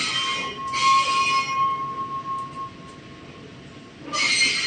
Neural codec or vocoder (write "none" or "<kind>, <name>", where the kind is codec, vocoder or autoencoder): none